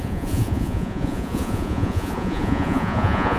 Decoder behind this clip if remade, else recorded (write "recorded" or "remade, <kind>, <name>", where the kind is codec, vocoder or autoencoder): remade, vocoder, Vocos